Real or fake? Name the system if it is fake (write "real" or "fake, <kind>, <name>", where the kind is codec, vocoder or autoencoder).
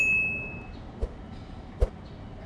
real